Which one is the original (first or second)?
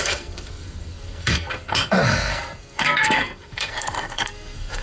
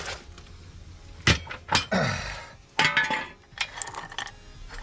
second